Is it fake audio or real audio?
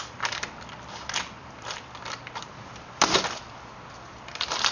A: fake